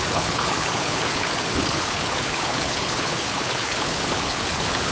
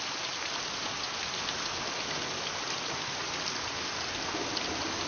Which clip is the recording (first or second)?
second